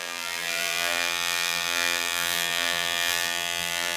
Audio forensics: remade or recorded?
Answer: remade